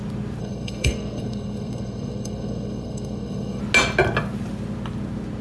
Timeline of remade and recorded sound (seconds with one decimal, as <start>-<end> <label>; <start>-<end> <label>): 0.0-0.4 recorded; 0.4-3.6 remade; 3.6-5.4 recorded